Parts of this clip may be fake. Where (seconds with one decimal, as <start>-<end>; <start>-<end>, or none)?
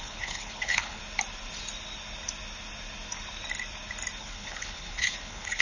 0.0-1.0; 4.2-5.6